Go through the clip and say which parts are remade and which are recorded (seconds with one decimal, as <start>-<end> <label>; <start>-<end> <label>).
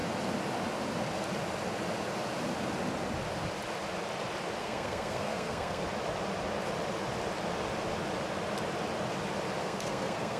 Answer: 0.0-4.6 recorded; 4.6-5.8 remade; 5.8-9.6 recorded; 9.6-10.4 remade